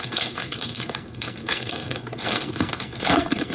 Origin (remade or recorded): remade